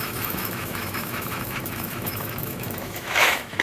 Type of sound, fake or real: fake